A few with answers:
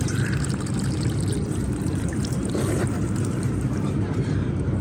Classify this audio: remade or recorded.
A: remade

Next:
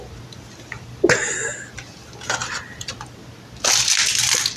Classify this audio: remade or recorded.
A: recorded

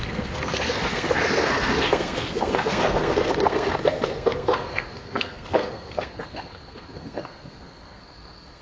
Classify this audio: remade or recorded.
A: remade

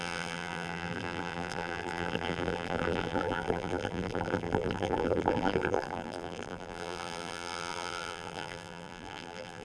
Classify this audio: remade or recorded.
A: remade